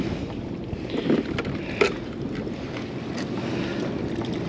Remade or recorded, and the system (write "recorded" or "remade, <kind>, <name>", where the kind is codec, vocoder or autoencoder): recorded